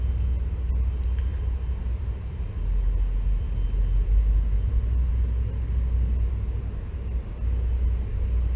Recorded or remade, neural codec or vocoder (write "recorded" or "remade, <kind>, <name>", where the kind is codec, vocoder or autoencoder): recorded